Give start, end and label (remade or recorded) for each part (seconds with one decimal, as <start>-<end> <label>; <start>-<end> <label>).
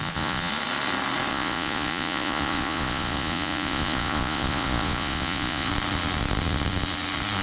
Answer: 0.0-0.5 remade; 0.5-1.3 recorded; 1.3-5.7 remade; 5.7-7.4 recorded